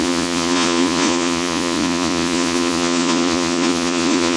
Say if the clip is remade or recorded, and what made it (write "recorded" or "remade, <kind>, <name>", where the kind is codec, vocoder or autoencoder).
remade, vocoder, Vocos